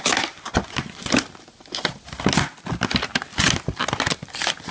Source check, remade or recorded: recorded